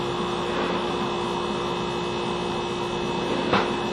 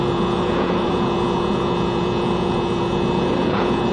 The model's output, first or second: second